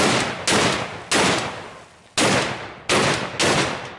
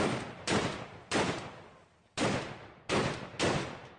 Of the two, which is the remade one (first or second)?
second